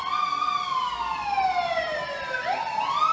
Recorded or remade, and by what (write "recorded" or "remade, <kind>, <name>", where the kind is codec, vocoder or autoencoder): recorded